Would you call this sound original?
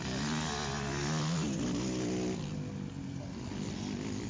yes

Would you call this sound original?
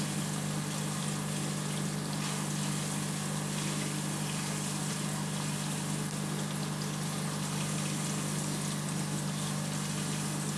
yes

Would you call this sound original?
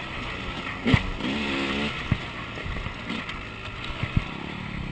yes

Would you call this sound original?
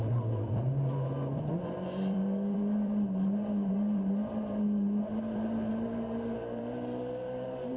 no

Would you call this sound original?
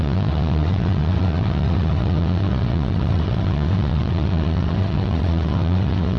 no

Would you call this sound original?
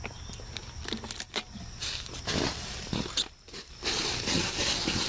yes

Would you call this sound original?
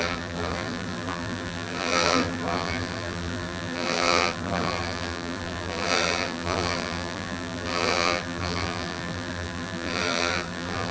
no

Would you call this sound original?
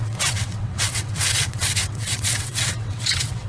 no